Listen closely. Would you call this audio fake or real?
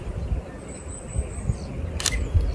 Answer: real